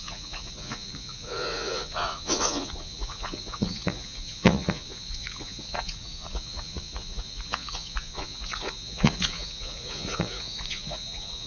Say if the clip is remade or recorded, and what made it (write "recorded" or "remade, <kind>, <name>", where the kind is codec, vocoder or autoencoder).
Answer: remade, vocoder, Vocos